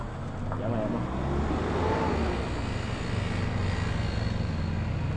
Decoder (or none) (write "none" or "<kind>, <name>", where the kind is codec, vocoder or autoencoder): none